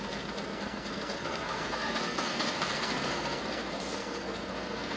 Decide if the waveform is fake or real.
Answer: fake